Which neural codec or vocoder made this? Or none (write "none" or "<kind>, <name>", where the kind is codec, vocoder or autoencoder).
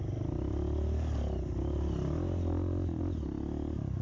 none